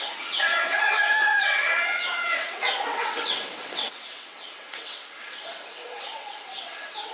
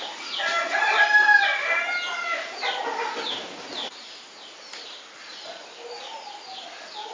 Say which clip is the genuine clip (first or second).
second